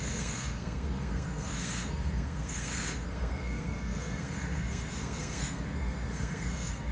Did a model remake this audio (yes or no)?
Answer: yes